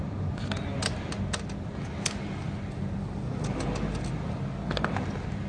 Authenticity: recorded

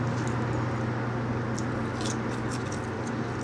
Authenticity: recorded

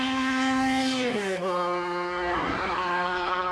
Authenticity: remade